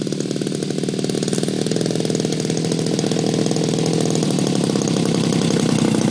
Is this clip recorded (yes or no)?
yes